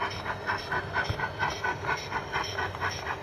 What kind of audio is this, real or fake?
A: real